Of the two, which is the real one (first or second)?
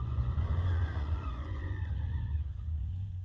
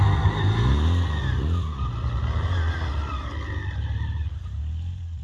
second